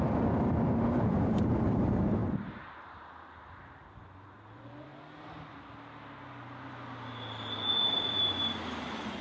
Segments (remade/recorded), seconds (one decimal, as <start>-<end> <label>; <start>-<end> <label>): 0.0-4.9 remade; 4.9-7.8 recorded; 7.8-9.2 remade

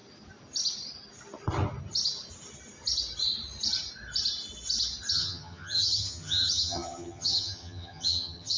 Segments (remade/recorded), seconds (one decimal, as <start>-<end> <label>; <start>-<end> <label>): 0.0-5.1 recorded; 5.1-8.6 remade

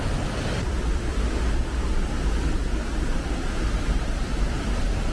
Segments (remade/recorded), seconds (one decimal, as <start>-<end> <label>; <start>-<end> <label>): 0.0-1.1 remade; 1.1-4.2 recorded; 4.2-5.1 remade

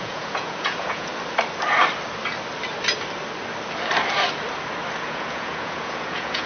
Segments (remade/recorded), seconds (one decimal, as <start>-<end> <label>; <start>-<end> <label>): 0.0-1.1 remade; 1.1-5.0 recorded; 5.0-6.5 remade

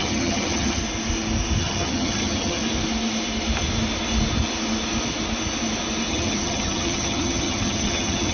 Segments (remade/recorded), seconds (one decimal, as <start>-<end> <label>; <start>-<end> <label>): 0.0-0.8 remade; 0.8-1.6 recorded; 1.6-2.6 remade; 2.6-6.1 recorded; 6.1-8.3 remade